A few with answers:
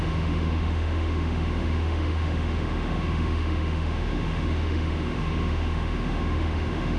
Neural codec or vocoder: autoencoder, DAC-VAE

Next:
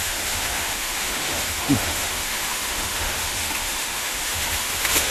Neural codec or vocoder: autoencoder, DAC-VAE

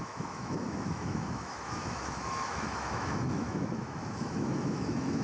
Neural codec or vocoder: autoencoder, DAC-VAE